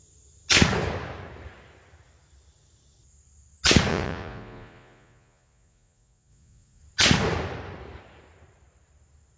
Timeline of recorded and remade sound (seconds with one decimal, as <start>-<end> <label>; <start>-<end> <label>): 0.0-3.9 recorded; 3.9-6.8 remade; 6.8-9.4 recorded